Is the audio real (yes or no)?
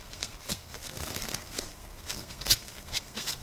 no